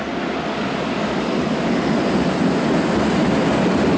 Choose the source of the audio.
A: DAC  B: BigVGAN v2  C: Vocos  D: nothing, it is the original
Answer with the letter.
D